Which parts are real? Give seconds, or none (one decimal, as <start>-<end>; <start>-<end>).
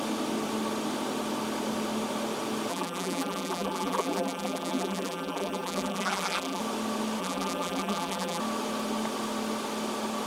0.0-2.7; 6.6-7.2; 8.4-10.3